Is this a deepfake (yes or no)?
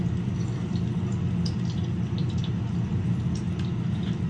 no